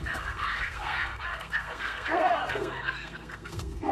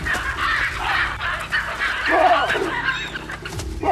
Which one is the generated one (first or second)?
first